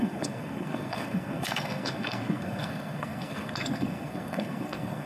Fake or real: fake